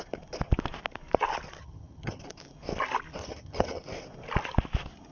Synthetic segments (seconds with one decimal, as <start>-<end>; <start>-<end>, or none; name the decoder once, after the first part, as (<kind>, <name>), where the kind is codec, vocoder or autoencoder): 1.6-2.2 (vocoder, HiFi-GAN); 3.2-3.8